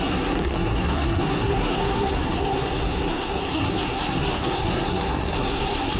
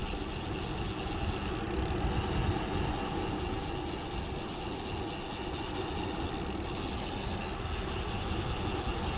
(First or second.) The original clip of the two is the second